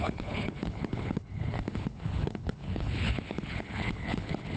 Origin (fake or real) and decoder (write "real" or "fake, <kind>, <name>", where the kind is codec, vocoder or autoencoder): fake, codec, HILCodec